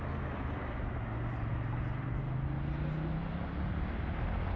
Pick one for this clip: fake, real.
real